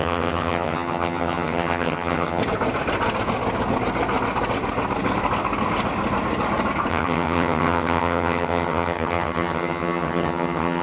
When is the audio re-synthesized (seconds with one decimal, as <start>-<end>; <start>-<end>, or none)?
0.0-2.4; 6.9-10.8